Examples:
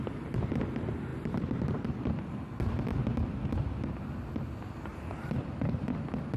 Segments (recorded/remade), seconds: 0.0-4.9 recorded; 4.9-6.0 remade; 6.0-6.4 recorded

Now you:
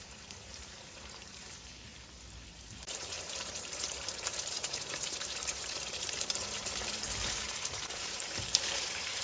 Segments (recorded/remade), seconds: 0.0-1.9 remade; 1.9-2.5 recorded; 2.5-9.2 remade

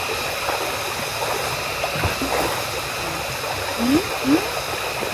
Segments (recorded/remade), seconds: 0.0-5.1 recorded

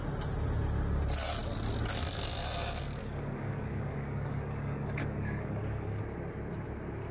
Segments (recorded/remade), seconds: 0.0-3.0 recorded; 3.0-6.0 remade; 6.0-7.1 recorded

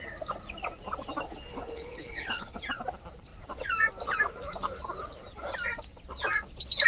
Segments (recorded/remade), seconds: 0.0-1.5 recorded; 1.5-2.6 remade; 2.6-6.9 recorded

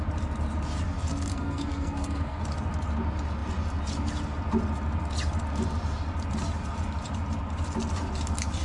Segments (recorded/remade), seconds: 0.0-1.3 recorded; 1.3-2.4 remade; 2.4-8.6 recorded

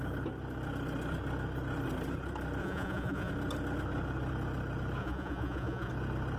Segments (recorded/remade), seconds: 0.0-2.6 recorded; 2.6-3.3 remade; 3.3-5.0 recorded; 5.0-5.9 remade; 5.9-6.4 recorded

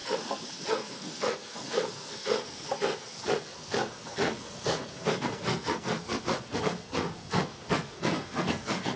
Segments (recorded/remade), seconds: 0.0-9.0 remade